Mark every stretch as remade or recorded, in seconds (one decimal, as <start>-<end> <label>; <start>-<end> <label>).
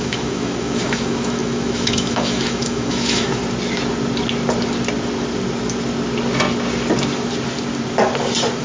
0.0-3.4 remade; 3.4-8.6 recorded